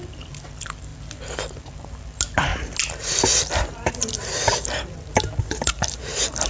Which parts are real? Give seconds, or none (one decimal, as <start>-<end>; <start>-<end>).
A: 0.0-6.5